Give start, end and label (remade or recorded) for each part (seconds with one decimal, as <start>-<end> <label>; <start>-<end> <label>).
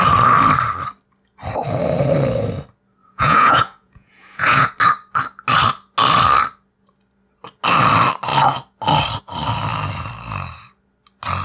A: 0.0-3.0 recorded; 3.0-4.7 remade; 4.7-11.4 recorded